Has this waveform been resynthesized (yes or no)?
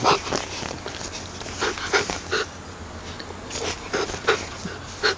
no